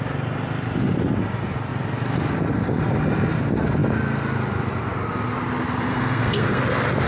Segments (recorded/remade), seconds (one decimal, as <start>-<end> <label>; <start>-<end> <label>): 0.0-5.9 recorded; 5.9-6.6 remade; 6.6-7.1 recorded